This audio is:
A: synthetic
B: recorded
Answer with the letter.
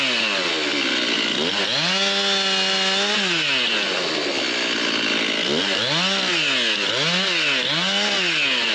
B